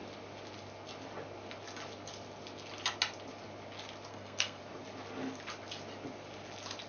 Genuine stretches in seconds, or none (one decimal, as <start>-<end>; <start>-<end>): 0.0-4.1; 4.6-6.9